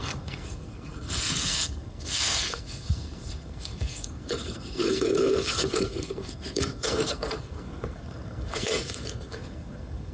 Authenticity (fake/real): fake